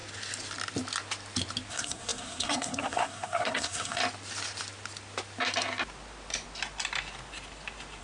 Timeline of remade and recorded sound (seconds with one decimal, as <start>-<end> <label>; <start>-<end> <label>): 0.0-1.7 recorded; 1.7-4.0 remade; 4.0-8.0 recorded

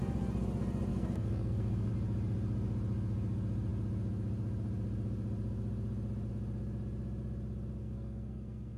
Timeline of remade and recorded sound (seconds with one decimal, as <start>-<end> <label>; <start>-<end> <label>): 0.0-0.9 recorded; 0.9-1.9 remade; 1.9-7.8 recorded; 7.8-8.8 remade

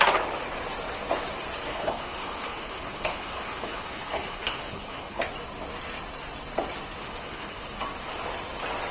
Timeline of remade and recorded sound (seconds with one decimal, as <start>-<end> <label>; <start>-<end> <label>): 0.0-1.7 recorded; 1.7-5.2 remade; 5.2-7.0 recorded; 7.0-7.7 remade; 7.7-8.9 recorded

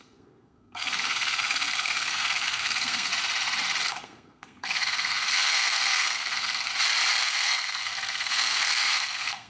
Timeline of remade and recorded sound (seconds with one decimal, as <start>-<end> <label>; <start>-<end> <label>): 0.0-3.1 remade; 3.1-3.8 recorded; 3.8-6.7 remade; 6.7-7.2 recorded; 7.2-9.5 remade

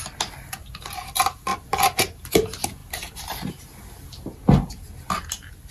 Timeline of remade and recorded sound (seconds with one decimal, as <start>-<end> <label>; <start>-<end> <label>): 0.0-2.8 recorded; 2.8-3.5 remade; 3.5-5.7 recorded

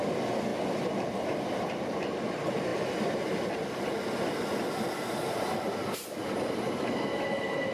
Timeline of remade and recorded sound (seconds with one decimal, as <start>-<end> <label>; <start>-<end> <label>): 0.0-7.7 recorded